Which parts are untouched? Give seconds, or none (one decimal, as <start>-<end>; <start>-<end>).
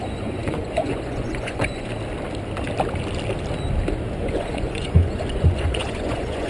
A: 1.9-4.2